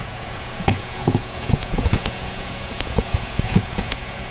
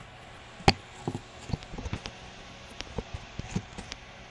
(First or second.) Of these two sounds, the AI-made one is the first